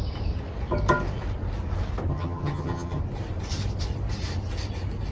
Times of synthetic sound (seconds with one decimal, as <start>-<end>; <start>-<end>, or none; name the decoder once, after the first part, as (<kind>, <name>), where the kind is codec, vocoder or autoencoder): 2.1-3.0 (vocoder, HiFi-GAN)